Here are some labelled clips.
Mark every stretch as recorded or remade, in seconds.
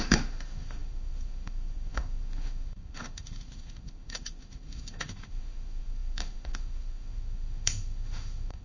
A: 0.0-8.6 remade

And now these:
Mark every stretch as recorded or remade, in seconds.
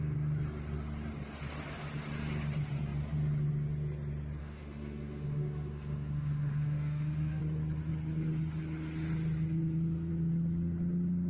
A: 0.0-4.4 recorded; 4.4-7.4 remade; 7.4-11.3 recorded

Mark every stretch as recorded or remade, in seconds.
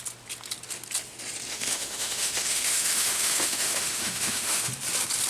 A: 0.0-1.5 recorded; 1.5-4.7 remade; 4.7-5.3 recorded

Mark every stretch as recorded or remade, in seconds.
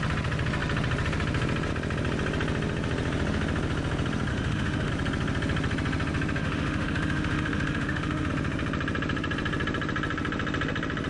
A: 0.0-4.3 recorded; 4.3-4.9 remade; 4.9-6.4 recorded; 6.4-8.3 remade; 8.3-11.1 recorded